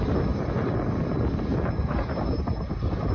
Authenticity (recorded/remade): recorded